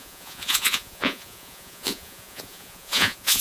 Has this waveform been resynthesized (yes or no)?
yes